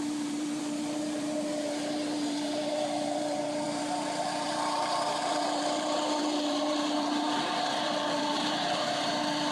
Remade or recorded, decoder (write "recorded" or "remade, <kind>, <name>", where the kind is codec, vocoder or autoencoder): remade, vocoder, BigVGAN v2